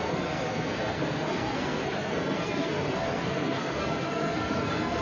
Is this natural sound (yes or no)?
no